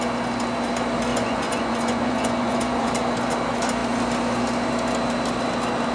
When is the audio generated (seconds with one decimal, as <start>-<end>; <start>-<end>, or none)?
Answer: 1.1-2.9